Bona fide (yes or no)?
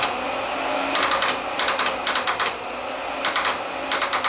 yes